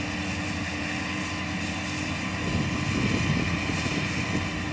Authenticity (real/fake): real